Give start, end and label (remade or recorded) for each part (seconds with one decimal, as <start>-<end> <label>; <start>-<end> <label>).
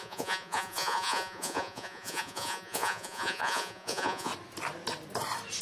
0.0-4.3 remade; 4.3-5.6 recorded